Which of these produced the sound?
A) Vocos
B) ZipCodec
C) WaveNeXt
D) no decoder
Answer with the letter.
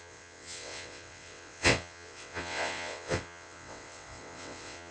C